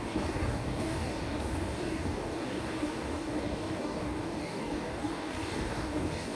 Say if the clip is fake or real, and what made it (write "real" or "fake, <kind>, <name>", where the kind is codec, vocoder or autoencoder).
fake, codec, DAC